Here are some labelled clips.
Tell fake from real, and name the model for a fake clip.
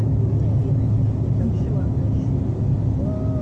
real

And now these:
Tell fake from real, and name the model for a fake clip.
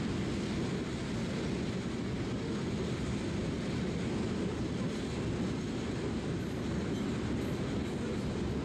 real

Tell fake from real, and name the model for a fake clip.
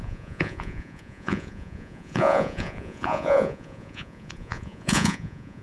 fake, vocoder, Vocos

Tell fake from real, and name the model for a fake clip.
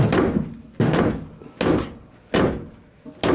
real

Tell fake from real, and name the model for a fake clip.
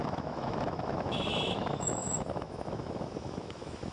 fake, autoencoder, DAC-VAE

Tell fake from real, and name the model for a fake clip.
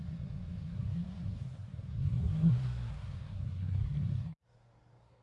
fake, codec, SNAC